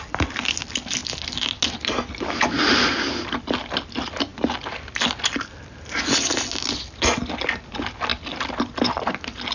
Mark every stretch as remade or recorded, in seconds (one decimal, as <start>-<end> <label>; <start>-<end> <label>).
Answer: 0.0-9.5 recorded